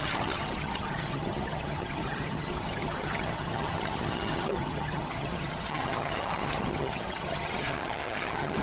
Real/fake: fake